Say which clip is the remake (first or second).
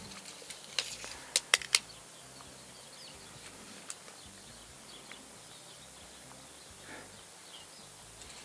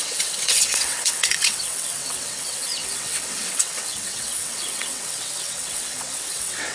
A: second